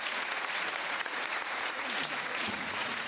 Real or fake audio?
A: fake